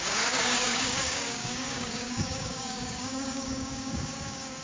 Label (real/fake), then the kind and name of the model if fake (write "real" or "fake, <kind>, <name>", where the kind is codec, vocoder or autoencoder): fake, codec, DAC